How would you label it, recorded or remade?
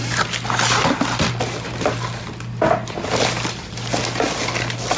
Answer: recorded